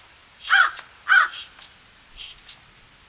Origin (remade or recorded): recorded